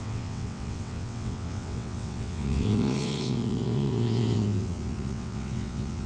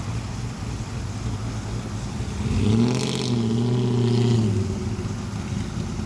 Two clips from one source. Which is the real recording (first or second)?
second